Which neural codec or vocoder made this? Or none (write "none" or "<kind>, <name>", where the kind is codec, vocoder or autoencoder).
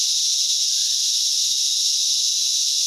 none